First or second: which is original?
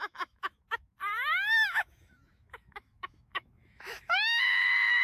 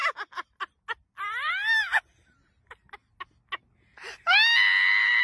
second